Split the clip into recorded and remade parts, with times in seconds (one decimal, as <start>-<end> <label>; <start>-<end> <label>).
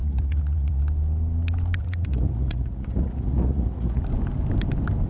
0.0-0.8 remade; 0.8-1.8 recorded; 1.8-4.0 remade; 4.0-5.1 recorded